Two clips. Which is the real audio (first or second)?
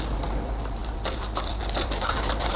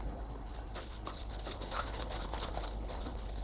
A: first